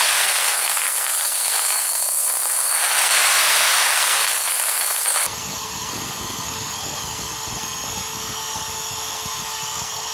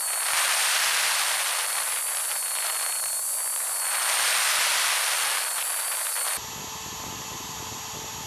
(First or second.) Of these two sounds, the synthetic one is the first